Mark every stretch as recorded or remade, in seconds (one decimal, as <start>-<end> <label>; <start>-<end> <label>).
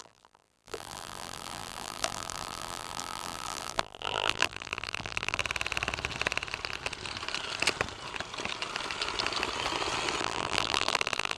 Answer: 0.0-5.4 remade; 5.4-10.2 recorded; 10.2-11.4 remade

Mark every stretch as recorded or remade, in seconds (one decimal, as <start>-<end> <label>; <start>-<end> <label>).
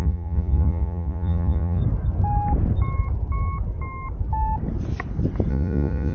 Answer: 0.0-1.8 remade; 1.8-5.5 recorded; 5.5-6.1 remade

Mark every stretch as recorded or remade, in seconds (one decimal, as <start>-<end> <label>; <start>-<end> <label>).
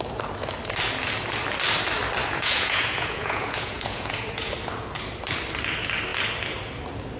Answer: 0.0-2.2 recorded; 2.2-4.5 remade; 4.5-7.2 recorded